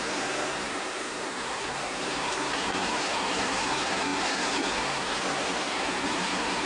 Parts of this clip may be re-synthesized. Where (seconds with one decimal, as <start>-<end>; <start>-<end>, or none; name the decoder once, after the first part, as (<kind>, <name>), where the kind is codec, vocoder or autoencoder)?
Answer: 0.0-6.7 (codec, SNAC)